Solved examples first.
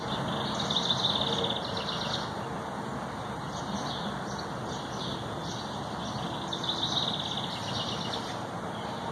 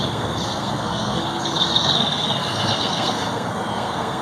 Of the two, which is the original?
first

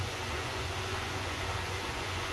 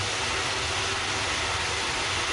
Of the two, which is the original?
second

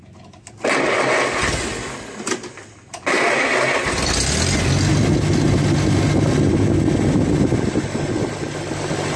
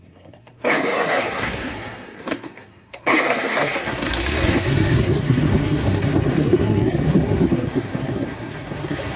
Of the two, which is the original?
first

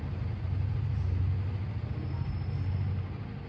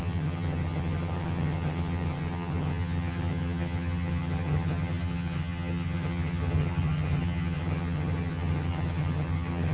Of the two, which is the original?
first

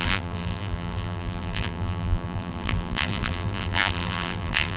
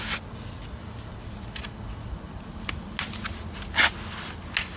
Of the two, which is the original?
second